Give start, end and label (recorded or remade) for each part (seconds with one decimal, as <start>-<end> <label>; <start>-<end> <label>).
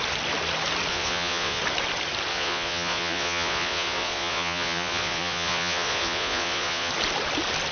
0.0-0.9 recorded; 0.9-1.6 remade; 1.6-2.3 recorded; 2.3-6.9 remade; 6.9-7.7 recorded